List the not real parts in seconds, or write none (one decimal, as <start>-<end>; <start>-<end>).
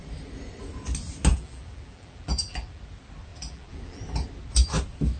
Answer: 1.3-2.8; 3.3-4.0